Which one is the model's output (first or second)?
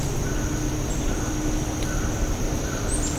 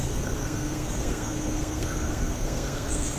second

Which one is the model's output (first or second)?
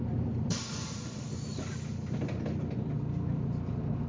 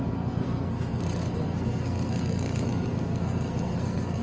second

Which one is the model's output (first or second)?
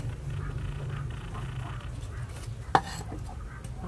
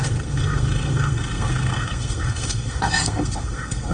second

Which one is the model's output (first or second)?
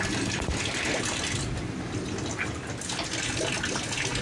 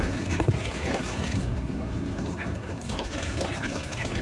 second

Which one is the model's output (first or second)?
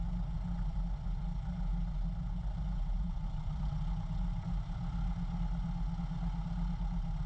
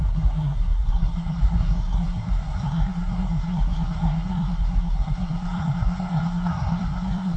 second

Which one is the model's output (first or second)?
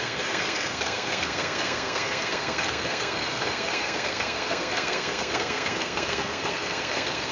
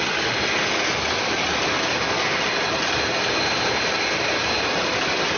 first